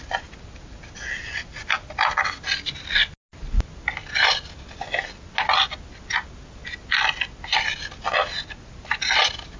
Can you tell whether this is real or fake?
real